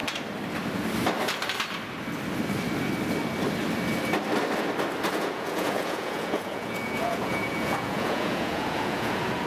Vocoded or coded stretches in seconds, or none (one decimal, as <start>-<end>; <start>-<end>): 5.1-9.5